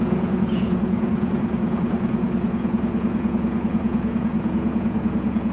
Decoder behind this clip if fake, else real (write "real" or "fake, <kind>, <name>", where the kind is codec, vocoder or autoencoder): fake, vocoder, Vocos